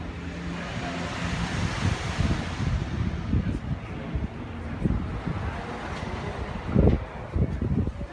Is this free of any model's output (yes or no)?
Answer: yes